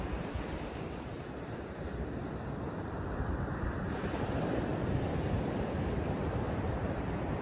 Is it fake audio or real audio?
fake